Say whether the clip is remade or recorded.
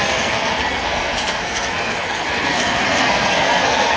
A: remade